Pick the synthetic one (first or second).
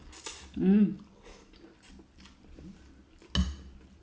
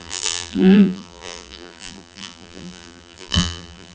second